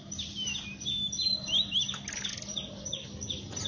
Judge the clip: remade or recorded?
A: recorded